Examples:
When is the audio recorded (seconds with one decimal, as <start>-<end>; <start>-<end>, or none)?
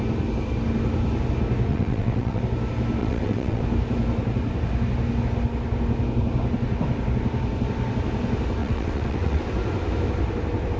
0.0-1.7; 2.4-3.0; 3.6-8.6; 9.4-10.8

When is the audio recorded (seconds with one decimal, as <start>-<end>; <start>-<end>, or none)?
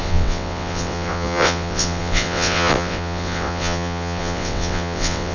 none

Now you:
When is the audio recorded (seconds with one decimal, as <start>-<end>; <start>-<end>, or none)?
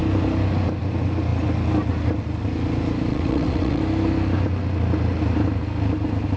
0.0-3.1; 3.8-6.4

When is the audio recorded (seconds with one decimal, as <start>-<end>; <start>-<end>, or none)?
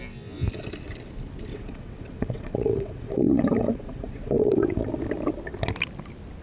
0.0-1.5; 4.9-6.4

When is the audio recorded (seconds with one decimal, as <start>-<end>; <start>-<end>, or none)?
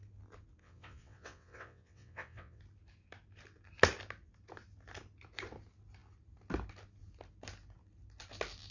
0.0-0.6; 2.6-8.7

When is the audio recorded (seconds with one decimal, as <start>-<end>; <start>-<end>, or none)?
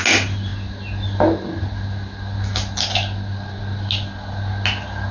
0.0-5.1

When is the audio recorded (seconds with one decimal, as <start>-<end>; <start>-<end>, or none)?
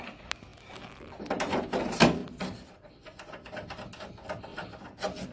0.0-5.3